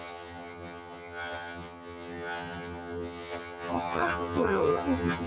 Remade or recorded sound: remade